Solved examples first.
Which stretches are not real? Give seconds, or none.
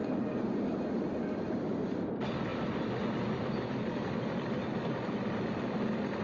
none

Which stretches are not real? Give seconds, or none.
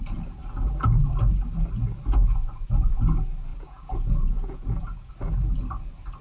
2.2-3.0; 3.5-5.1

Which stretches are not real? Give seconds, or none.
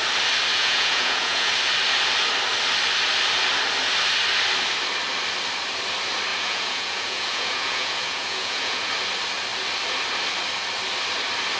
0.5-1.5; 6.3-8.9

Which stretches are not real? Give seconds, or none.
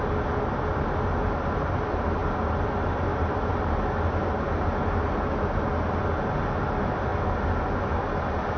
none